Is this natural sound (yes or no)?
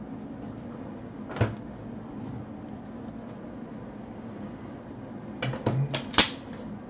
yes